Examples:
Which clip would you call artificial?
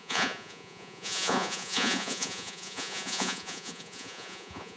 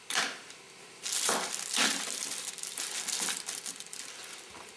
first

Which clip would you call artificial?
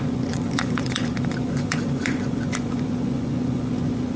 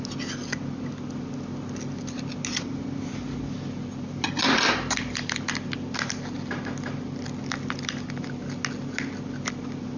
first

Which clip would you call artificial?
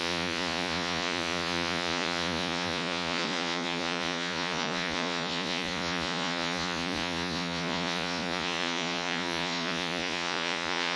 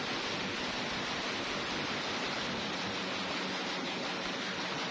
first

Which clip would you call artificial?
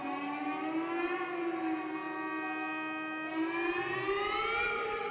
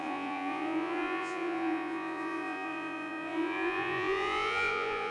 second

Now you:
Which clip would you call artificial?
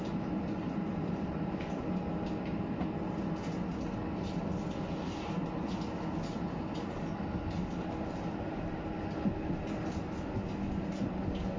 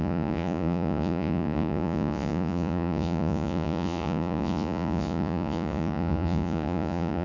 second